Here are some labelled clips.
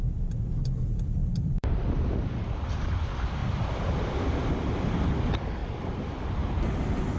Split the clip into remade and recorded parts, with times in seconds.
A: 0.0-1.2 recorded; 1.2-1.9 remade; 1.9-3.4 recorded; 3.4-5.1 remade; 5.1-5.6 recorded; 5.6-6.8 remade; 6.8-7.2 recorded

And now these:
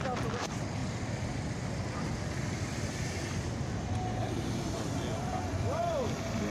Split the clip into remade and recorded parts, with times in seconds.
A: 0.0-6.5 recorded

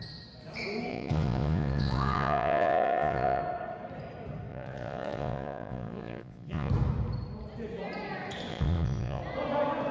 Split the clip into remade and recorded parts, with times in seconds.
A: 0.0-0.9 recorded; 0.9-3.4 remade; 3.4-4.5 recorded; 4.5-6.7 remade; 6.7-8.5 recorded; 8.5-9.2 remade; 9.2-9.9 recorded